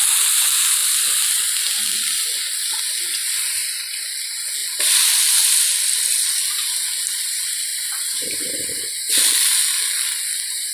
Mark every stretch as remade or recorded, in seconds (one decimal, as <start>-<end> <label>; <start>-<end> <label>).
0.0-7.7 recorded; 7.7-8.8 remade; 8.8-10.7 recorded